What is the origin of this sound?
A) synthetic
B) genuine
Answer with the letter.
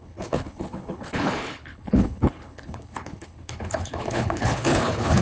A